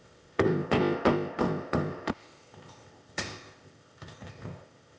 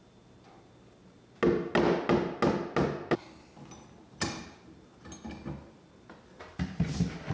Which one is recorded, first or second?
second